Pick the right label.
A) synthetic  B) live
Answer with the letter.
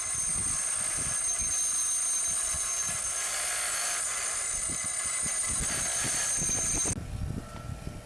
B